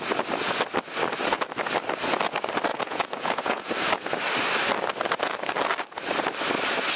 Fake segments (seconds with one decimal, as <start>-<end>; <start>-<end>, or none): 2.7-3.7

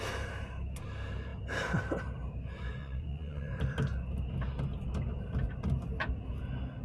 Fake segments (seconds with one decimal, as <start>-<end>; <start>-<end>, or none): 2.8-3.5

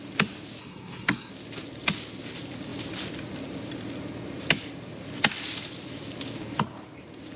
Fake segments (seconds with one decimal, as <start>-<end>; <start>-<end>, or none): 0.6-1.3